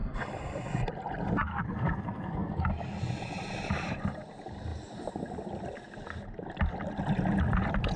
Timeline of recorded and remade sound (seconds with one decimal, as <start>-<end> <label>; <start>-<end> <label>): 0.0-1.5 recorded; 1.5-2.7 remade; 2.7-8.0 recorded